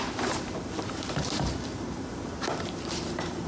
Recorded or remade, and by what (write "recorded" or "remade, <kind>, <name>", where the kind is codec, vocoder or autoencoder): remade, vocoder, BigVGAN v2